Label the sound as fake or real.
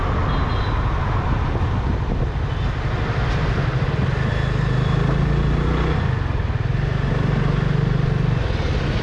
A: real